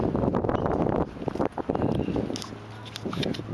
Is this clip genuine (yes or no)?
yes